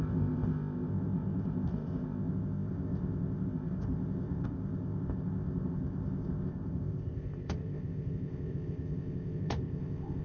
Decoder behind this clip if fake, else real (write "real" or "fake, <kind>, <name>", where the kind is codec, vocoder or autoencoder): fake, codec, ZipCodec